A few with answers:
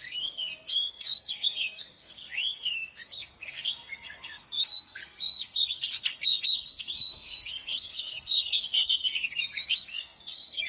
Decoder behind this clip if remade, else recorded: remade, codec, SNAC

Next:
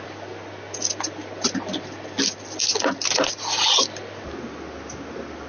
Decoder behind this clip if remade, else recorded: recorded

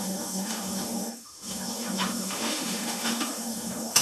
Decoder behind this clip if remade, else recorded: remade, autoencoder, DAC-VAE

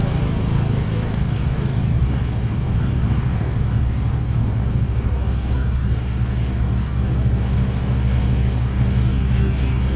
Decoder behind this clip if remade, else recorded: remade, codec, DAC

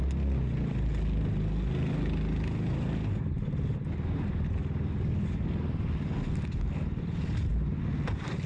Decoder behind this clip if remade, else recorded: recorded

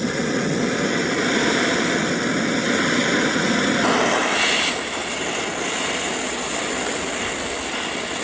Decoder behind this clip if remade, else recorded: recorded